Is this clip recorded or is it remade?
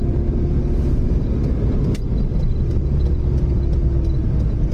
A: recorded